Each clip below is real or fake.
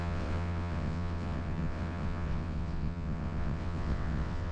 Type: fake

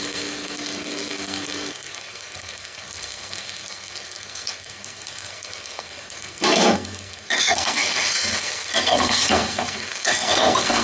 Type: fake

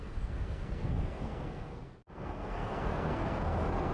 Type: fake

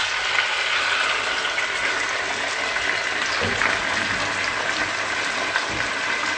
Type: real